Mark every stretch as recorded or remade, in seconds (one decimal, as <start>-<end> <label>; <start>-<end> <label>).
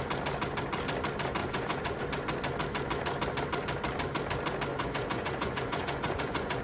0.0-1.4 recorded; 1.4-2.0 remade; 2.0-4.7 recorded; 4.7-6.6 remade